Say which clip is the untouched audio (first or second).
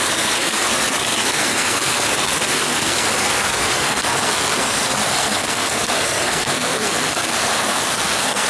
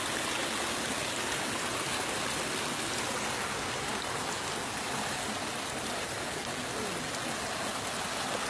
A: second